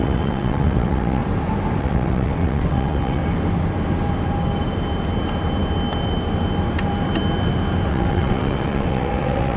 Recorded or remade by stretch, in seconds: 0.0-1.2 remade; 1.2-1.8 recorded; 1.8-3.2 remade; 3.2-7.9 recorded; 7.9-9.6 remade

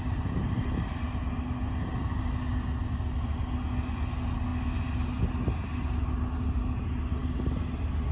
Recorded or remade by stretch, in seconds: 0.0-8.1 recorded

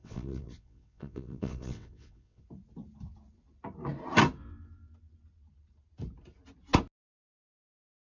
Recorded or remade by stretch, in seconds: 0.0-2.4 remade; 2.4-8.2 recorded